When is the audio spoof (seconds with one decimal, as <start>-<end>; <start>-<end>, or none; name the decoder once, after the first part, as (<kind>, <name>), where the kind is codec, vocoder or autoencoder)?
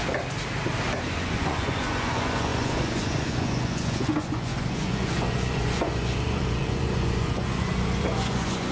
1.1-8.7 (vocoder, Vocos)